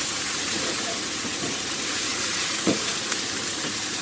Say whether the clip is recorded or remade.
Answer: remade